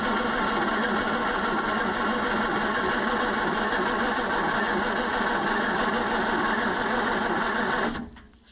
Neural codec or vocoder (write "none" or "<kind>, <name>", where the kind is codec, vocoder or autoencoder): none